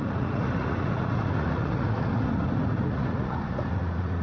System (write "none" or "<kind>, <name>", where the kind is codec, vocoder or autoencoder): vocoder, Vocos